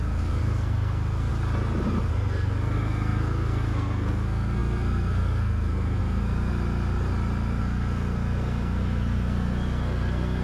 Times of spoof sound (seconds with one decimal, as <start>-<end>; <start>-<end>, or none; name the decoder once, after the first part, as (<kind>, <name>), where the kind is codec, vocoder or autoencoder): 0.0-1.3 (codec, SNAC); 2.1-6.5; 7.6-10.4